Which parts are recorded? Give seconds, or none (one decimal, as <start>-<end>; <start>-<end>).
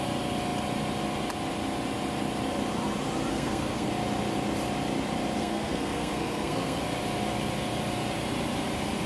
0.0-3.3; 3.9-5.4; 6.8-9.1